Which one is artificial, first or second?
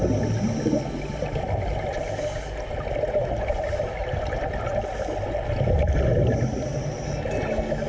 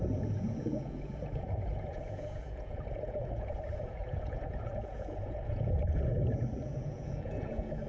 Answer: second